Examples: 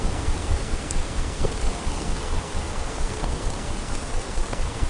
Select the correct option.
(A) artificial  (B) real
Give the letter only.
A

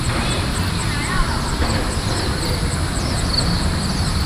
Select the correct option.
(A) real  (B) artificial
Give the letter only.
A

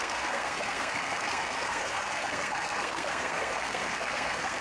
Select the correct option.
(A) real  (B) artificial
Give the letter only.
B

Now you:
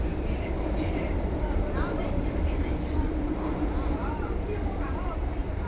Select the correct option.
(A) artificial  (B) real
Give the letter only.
A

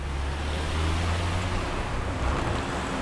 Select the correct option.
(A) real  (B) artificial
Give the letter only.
A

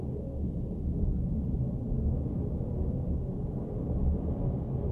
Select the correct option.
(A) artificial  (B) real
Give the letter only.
B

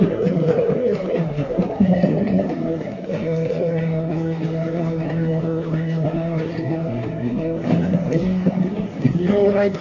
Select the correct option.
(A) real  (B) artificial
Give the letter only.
B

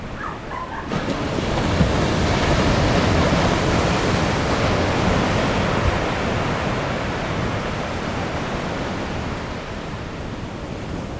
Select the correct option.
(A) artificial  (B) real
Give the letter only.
B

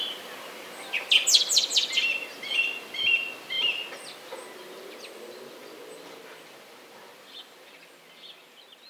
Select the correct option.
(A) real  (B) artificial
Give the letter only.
A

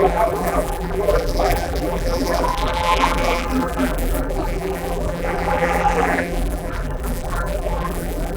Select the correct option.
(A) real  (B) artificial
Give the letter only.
B